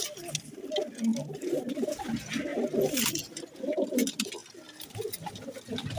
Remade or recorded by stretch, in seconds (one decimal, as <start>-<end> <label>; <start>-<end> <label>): 0.0-1.1 recorded; 1.1-2.0 remade; 2.0-2.5 recorded; 2.5-3.0 remade; 3.0-6.0 recorded